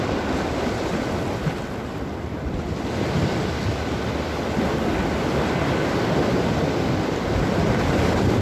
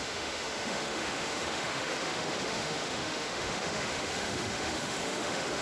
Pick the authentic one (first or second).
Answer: first